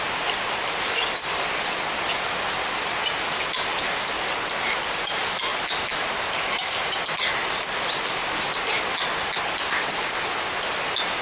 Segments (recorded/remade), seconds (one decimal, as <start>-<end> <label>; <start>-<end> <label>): 0.0-11.2 recorded